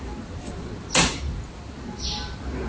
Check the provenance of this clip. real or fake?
real